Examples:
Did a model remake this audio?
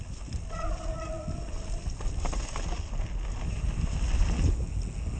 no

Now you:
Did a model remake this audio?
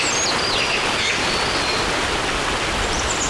no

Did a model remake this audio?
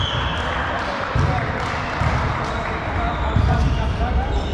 no